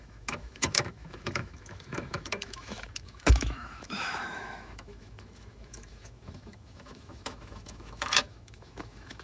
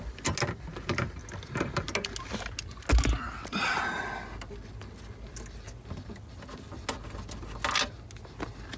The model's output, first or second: first